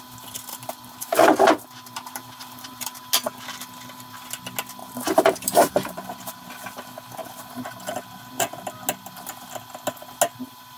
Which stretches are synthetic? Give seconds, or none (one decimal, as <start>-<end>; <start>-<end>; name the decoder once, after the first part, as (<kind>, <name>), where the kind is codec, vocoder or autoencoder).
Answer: 0.5-3.0 (vocoder, BigVGAN v2); 4.8-6.5